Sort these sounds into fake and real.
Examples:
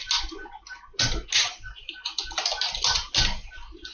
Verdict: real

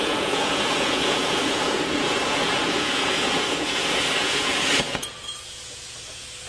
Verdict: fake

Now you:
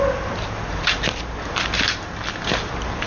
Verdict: real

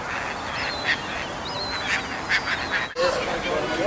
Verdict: real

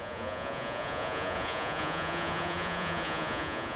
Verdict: fake